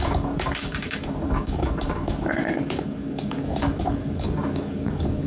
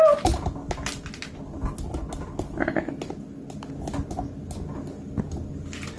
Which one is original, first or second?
second